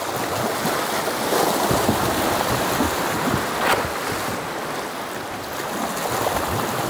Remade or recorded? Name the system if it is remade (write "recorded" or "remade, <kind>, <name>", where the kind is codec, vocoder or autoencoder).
recorded